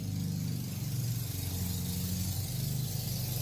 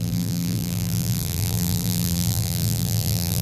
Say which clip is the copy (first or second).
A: second